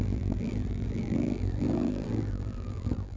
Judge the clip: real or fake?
fake